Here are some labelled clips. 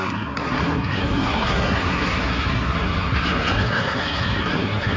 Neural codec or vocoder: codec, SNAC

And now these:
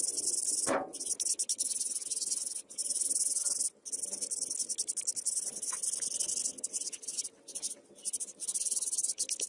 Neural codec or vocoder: none